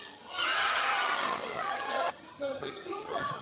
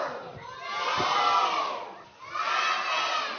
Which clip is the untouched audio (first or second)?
second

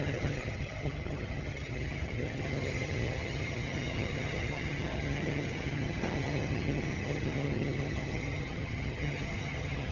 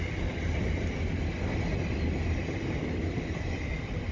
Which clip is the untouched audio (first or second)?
second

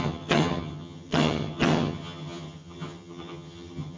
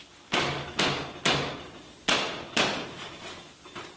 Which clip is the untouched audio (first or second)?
second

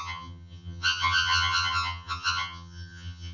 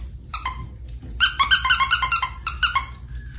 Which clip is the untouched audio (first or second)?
second